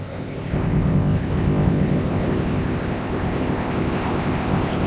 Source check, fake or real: fake